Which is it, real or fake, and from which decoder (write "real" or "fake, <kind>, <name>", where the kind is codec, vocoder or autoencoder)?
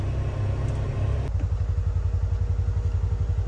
real